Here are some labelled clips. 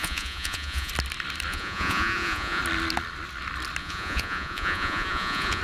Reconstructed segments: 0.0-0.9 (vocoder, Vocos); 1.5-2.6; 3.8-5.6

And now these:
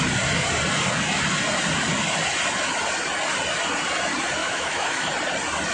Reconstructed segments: 4.4-5.1 (autoencoder, DAC-VAE)

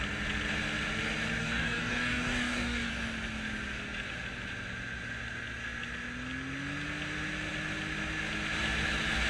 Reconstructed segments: 1.4-2.9 (codec, DAC)

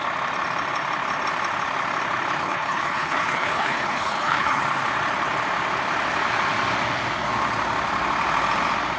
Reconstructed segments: 2.4-4.6 (codec, HILCodec)

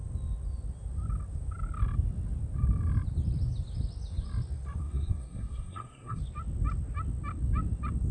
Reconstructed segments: 4.8-6.2 (codec, SNAC)

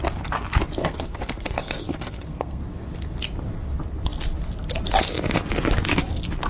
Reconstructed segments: 0.8-2.6 (codec, SNAC)

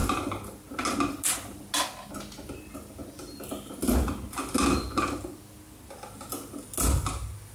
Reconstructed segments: none

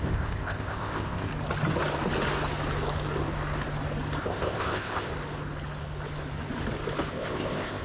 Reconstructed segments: 0.0-1.3 (codec, ZipCodec); 4.2-5.1; 7.1-7.8